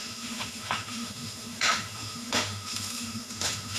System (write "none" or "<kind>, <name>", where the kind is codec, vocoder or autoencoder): autoencoder, DAC-VAE